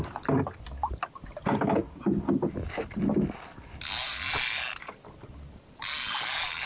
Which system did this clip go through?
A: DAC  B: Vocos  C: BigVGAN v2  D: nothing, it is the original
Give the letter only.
D